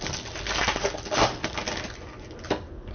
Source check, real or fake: real